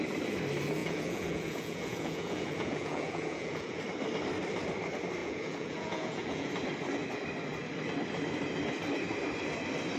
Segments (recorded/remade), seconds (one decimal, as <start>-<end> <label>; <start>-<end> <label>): 0.0-0.8 recorded; 0.8-3.8 remade; 3.8-5.2 recorded; 5.2-6.5 remade; 6.5-10.0 recorded